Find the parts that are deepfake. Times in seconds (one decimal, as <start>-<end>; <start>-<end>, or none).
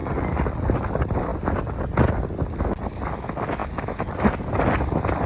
none